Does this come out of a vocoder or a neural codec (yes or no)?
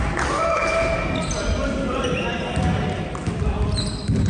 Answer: no